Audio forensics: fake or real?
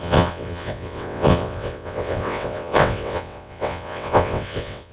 fake